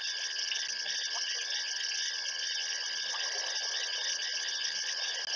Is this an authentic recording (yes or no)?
yes